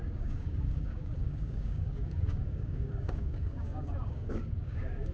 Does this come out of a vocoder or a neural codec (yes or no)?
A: yes